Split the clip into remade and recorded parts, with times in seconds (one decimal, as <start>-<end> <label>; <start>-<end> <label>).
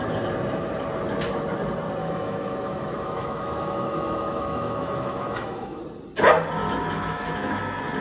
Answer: 0.0-2.0 recorded; 2.0-5.8 remade; 5.8-6.6 recorded; 6.6-7.6 remade; 7.6-8.0 recorded